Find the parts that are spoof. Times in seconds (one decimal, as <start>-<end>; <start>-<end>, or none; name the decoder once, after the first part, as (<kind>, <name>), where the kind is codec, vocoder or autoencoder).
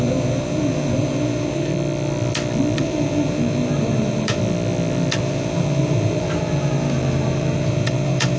0.0-1.7 (vocoder, BigVGAN v2); 2.8-4.4; 5.2-8.4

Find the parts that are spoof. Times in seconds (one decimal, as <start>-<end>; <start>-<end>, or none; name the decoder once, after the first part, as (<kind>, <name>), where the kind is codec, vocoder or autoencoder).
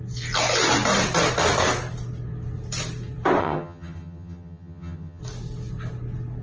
3.4-5.2 (vocoder, HiFi-GAN)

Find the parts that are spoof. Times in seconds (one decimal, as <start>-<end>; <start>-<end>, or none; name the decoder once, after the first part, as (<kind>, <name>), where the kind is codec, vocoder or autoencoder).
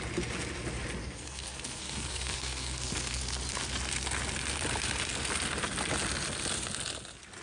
1.0-3.2 (codec, SNAC)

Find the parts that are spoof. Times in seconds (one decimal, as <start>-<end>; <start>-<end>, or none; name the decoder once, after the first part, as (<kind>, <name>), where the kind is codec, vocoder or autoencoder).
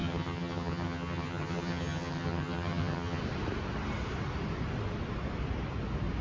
0.0-3.2 (vocoder, HiFi-GAN)